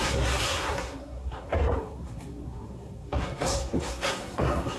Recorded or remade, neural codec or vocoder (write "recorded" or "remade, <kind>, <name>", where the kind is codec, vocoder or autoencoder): remade, codec, SNAC